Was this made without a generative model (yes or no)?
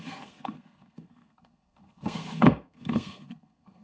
no